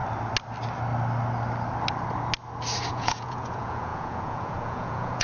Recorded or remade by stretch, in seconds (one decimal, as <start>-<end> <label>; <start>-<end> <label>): 0.0-2.9 recorded; 2.9-5.2 remade